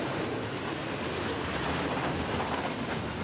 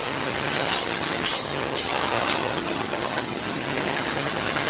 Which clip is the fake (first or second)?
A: second